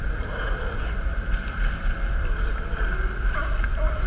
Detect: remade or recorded recorded